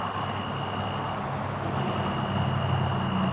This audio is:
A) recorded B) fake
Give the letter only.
A